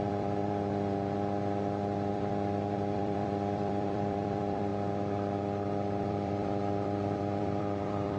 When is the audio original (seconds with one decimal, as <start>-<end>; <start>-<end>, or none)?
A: 0.4-2.1; 4.7-6.0